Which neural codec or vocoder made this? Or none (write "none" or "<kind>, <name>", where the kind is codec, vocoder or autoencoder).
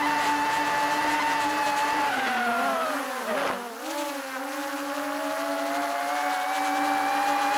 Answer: none